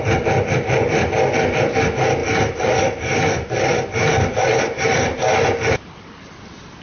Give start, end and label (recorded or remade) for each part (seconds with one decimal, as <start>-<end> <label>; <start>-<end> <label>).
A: 0.0-6.8 recorded